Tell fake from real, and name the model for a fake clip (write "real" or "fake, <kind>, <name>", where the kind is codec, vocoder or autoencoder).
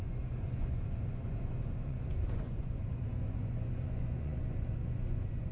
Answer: fake, vocoder, Vocos